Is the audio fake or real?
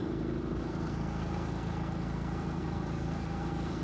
fake